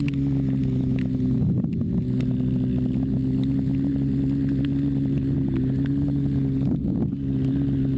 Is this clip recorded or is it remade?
recorded